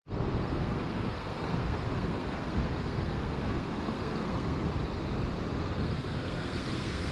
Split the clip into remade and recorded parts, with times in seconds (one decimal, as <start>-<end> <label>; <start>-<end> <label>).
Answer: 0.0-4.7 remade; 4.7-5.6 recorded; 5.6-7.1 remade